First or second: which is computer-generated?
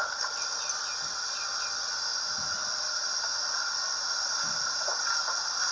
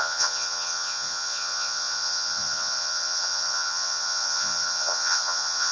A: second